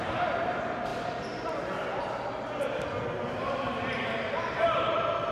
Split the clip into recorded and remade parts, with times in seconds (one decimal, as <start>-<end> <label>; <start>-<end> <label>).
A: 0.0-0.9 remade; 0.9-3.2 recorded; 3.2-5.3 remade